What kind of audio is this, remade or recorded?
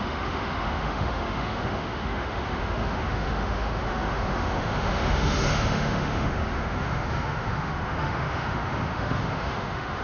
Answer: remade